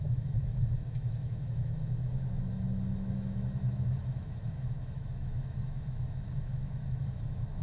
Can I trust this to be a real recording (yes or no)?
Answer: no